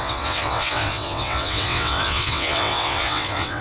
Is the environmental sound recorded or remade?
remade